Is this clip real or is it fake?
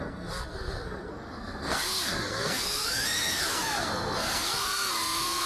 fake